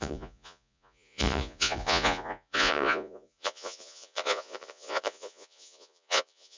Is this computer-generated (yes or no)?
yes